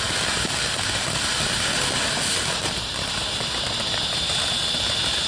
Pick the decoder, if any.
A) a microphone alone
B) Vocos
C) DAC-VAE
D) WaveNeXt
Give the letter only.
A